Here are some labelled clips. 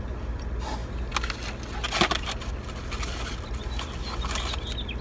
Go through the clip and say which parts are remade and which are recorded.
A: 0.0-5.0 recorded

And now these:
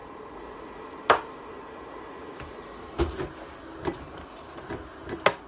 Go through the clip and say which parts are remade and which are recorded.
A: 0.0-3.0 remade; 3.0-3.9 recorded; 3.9-4.7 remade; 4.7-5.5 recorded